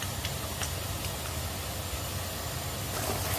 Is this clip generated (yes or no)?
no